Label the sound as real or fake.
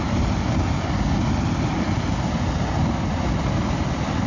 real